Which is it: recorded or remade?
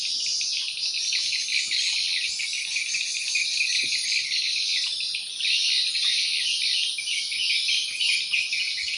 recorded